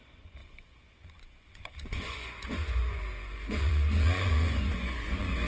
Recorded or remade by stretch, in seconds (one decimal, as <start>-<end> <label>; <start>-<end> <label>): 0.0-5.5 remade